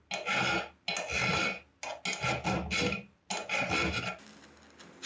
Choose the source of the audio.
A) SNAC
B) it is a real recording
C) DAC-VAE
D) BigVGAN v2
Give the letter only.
B